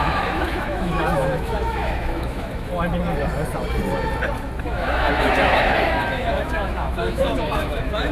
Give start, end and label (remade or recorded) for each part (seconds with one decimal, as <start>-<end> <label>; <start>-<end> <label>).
0.0-2.7 remade; 2.7-4.6 recorded; 4.6-8.1 remade